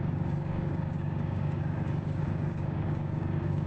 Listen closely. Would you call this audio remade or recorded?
remade